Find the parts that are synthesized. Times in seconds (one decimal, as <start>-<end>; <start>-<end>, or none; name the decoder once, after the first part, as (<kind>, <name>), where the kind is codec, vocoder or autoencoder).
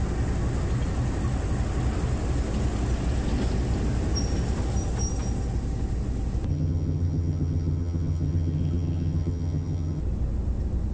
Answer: 6.5-10.0 (vocoder, HiFi-GAN)